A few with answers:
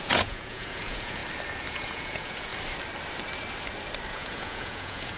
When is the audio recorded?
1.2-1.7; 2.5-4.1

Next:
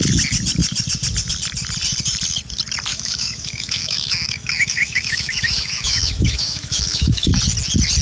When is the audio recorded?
0.0-2.9; 7.3-8.0

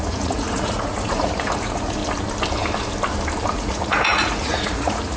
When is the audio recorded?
2.0-3.5

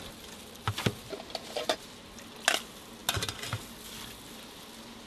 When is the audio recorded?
0.0-5.1

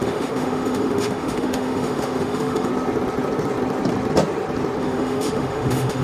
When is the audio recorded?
2.7-4.8